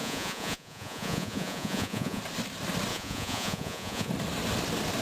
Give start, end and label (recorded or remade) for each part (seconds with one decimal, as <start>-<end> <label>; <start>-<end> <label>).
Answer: 0.0-2.2 remade; 2.2-2.9 recorded; 2.9-4.1 remade; 4.1-5.0 recorded